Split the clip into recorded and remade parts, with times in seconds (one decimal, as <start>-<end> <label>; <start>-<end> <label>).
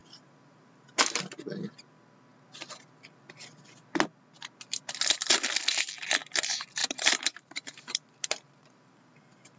0.0-1.3 remade; 1.3-6.8 recorded; 6.8-9.6 remade